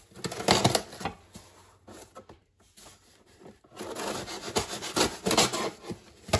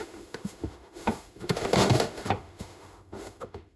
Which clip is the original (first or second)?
first